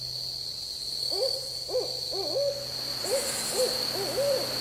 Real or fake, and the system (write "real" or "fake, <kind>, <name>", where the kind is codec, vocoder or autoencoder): real